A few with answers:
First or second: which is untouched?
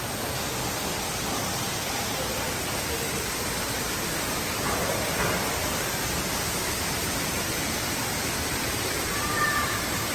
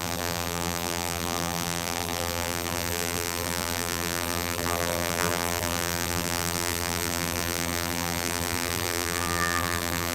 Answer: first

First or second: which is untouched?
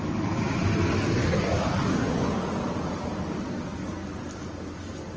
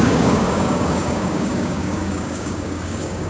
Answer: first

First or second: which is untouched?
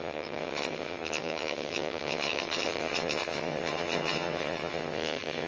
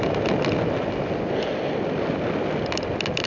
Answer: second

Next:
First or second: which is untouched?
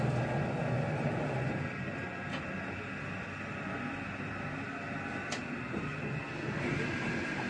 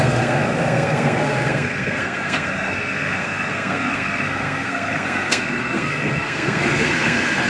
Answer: first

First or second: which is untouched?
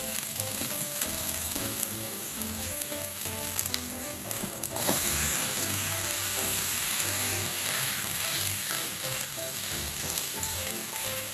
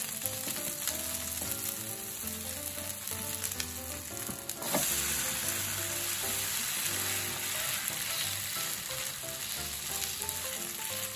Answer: second